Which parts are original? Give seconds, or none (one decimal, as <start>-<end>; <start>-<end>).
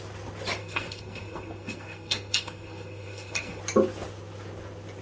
0.0-0.6; 3.6-5.0